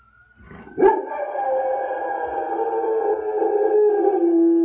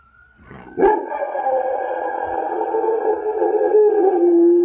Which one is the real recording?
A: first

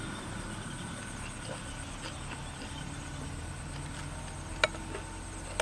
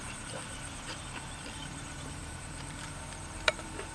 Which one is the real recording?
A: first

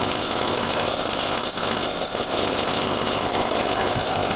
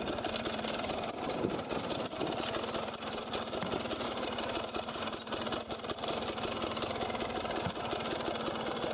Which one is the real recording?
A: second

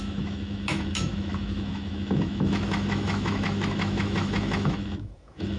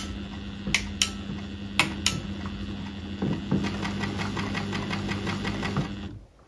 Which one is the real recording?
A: second